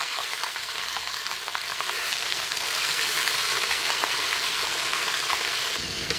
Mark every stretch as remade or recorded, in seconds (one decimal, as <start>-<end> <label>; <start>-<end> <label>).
0.0-6.2 remade